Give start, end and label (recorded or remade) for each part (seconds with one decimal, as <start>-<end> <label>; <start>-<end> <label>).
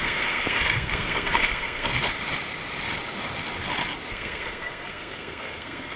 0.0-1.9 remade; 1.9-4.1 recorded; 4.1-6.0 remade